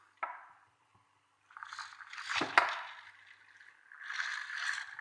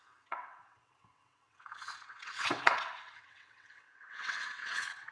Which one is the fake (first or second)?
second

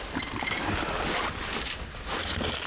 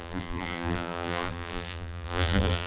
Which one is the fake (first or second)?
second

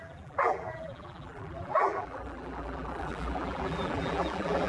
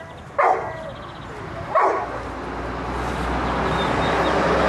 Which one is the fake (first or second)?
first